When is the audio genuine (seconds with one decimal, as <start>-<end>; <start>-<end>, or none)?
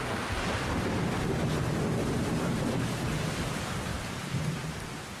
0.0-2.0; 2.5-3.9; 4.6-5.2